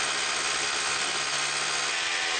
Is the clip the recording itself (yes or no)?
yes